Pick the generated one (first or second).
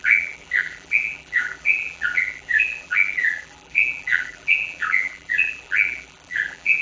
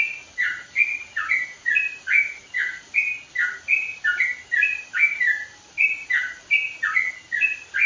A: first